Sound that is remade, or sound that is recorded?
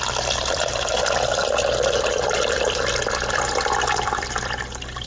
remade